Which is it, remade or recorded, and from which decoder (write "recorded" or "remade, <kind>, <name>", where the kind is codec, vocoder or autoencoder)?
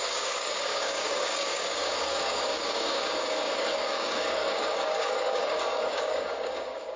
remade, codec, DAC